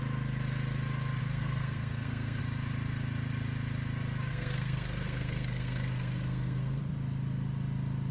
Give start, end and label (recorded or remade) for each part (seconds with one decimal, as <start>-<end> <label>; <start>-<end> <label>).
0.0-1.2 recorded; 1.2-2.4 remade; 2.4-4.3 recorded; 4.3-6.8 remade; 6.8-8.1 recorded